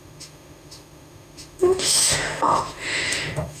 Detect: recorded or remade remade